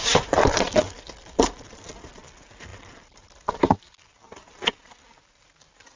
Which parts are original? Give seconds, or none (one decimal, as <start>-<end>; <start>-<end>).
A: 0.0-6.0